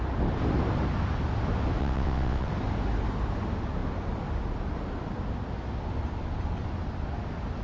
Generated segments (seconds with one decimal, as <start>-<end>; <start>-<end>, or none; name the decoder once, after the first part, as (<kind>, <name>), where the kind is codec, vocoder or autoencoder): 1.8-2.5 (vocoder, WaveNeXt)